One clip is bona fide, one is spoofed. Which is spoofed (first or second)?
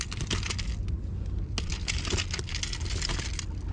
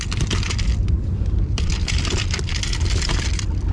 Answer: second